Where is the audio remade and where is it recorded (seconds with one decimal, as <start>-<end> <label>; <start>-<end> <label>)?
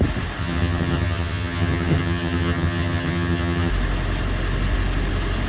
0.0-0.4 recorded; 0.4-3.7 remade; 3.7-5.5 recorded